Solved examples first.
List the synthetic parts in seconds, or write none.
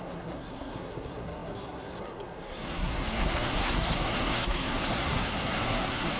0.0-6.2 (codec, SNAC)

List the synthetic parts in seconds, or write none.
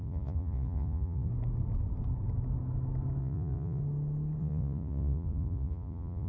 0.0-1.3 (vocoder, Vocos); 3.2-3.8; 4.4-6.3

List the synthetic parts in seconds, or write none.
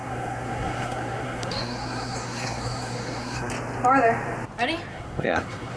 0.0-3.5 (codec, SNAC); 4.9-5.8